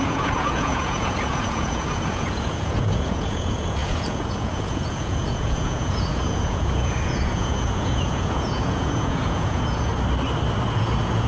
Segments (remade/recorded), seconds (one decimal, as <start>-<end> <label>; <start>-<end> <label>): 0.0-9.9 remade; 9.9-10.8 recorded; 10.8-11.3 remade